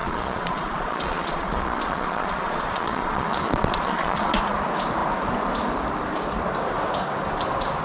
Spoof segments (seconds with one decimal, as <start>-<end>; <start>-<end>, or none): 0.0-4.4